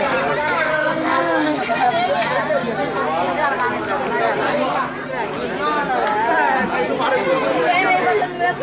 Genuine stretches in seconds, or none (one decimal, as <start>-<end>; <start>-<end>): 0.0-0.7; 1.9-8.6